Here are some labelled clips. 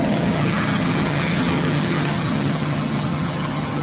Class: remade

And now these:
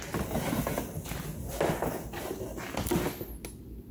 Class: recorded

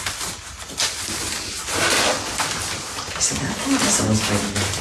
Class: recorded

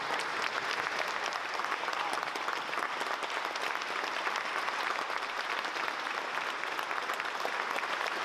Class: recorded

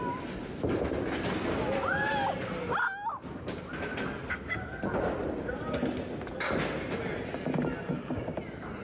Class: recorded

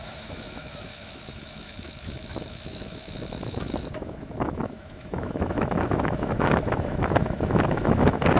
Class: remade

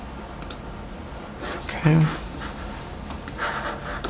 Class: recorded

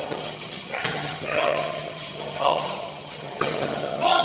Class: remade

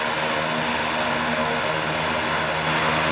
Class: recorded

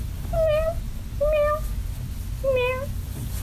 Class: recorded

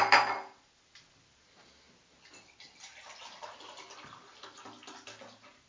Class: recorded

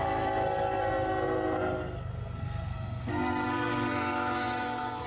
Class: remade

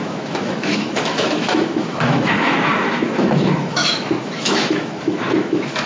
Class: remade